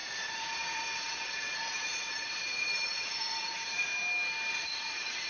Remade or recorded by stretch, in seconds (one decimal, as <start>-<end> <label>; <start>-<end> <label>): 0.0-3.9 remade; 3.9-4.5 recorded; 4.5-5.3 remade